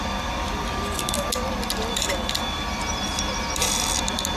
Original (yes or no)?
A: yes